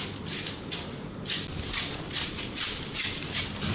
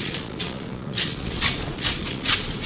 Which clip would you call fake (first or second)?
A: second